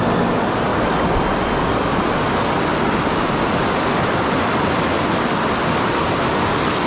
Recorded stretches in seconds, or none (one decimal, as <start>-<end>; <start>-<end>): 0.0-6.9